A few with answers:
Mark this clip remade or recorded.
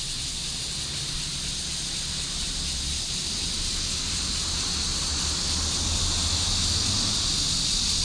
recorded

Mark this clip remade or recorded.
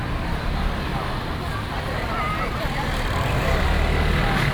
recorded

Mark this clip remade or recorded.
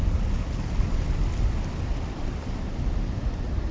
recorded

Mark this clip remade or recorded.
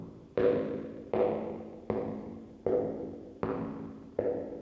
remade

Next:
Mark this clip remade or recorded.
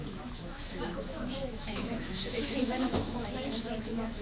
remade